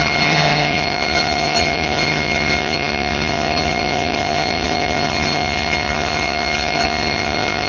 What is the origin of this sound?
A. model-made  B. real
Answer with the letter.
A